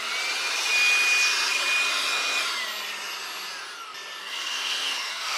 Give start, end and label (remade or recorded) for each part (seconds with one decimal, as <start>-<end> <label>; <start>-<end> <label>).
0.0-4.2 recorded; 4.2-5.4 remade